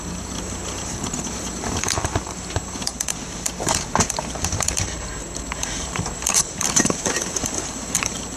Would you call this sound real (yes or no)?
no